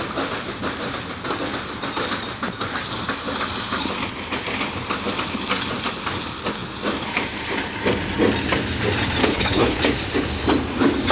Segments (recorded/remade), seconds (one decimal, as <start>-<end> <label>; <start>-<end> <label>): 0.0-9.2 recorded; 9.2-9.8 remade; 9.8-11.1 recorded